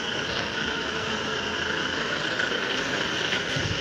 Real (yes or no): no